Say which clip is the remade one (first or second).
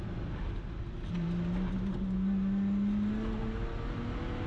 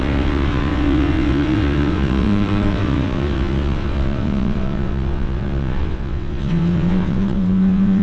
second